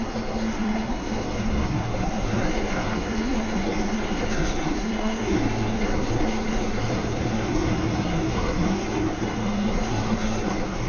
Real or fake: fake